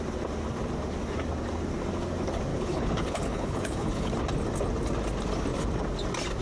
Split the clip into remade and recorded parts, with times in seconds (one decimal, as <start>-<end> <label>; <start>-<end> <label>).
0.0-2.5 recorded; 2.5-4.1 remade; 4.1-6.4 recorded